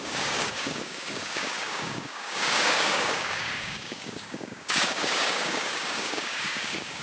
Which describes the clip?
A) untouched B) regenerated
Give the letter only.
B